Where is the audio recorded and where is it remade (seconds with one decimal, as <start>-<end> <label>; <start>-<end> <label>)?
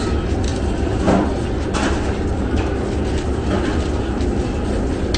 0.0-5.2 recorded